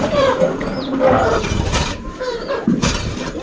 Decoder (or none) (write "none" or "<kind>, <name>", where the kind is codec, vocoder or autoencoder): vocoder, BigVGAN v2